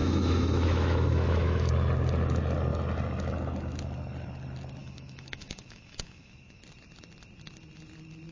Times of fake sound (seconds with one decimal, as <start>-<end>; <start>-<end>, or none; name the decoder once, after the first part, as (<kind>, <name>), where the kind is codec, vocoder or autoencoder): 0.0-1.7 (autoencoder, DAC-VAE); 4.8-6.6